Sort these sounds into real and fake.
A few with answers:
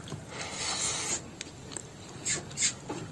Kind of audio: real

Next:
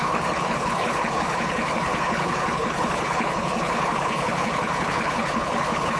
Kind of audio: fake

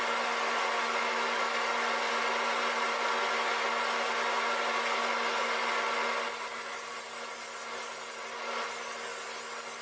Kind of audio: real